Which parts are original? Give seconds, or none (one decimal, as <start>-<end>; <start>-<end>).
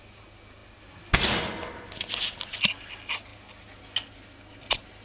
0.0-5.0